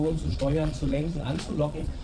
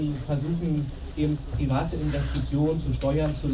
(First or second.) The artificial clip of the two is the first